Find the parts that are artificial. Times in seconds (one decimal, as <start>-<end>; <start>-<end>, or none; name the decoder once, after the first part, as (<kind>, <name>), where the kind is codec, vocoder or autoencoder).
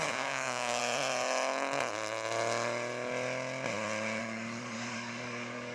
0.0-0.8 (codec, DAC); 4.2-5.7